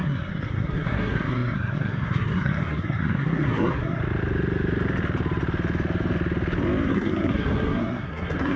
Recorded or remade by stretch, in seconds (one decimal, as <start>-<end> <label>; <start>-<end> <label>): 0.0-4.0 remade; 4.0-6.9 recorded; 6.9-8.6 remade